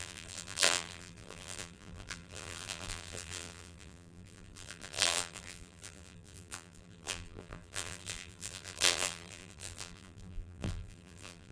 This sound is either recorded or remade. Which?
remade